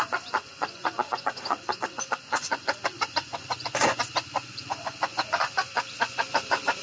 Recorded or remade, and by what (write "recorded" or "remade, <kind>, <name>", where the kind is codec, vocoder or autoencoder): remade, vocoder, Vocos